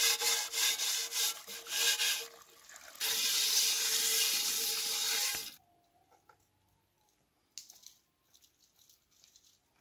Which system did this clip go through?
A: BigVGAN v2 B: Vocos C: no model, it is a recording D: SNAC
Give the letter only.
C